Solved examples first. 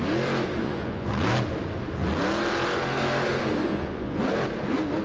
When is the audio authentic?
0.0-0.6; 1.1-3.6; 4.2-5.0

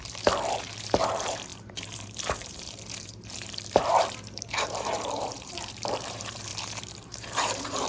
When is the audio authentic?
none

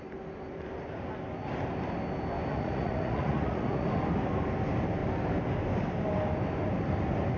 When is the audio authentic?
0.0-2.5; 3.9-7.4

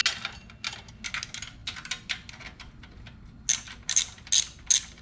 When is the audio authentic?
0.0-5.0

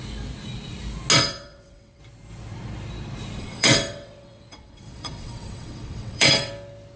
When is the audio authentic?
0.0-1.2; 2.0-3.4; 6.5-7.0

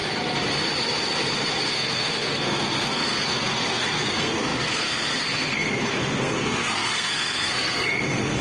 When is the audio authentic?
0.0-1.7